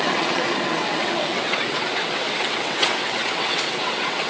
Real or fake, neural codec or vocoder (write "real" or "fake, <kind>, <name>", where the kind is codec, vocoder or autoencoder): fake, vocoder, WaveNeXt